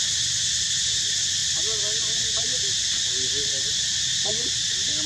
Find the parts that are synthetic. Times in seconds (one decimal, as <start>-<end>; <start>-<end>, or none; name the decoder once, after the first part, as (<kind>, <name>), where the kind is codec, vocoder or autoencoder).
none